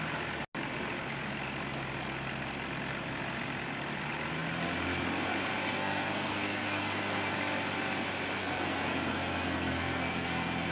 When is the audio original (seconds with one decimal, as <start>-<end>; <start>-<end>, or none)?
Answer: 0.0-5.7; 7.3-8.4